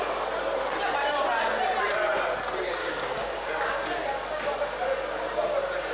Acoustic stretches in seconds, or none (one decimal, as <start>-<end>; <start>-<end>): 0.0-2.8; 3.5-5.9